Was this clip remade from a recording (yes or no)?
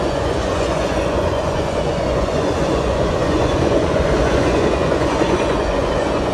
yes